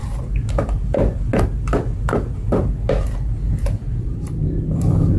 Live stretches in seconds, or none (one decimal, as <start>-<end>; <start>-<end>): 0.0-5.2

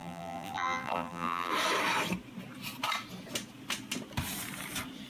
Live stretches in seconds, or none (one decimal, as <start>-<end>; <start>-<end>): 1.5-5.1

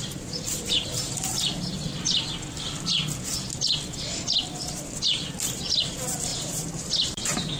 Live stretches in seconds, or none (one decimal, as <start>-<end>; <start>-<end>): 1.1-6.3

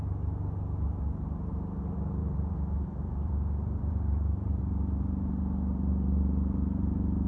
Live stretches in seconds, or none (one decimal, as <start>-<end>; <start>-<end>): 0.0-2.2; 4.6-7.3

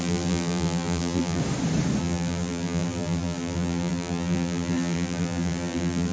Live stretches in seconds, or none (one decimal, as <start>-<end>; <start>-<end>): 1.4-2.0

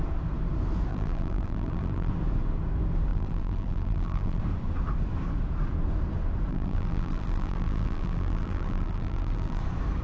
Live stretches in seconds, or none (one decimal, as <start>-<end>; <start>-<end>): 0.0-0.9; 2.1-3.1; 4.4-6.5; 9.6-10.0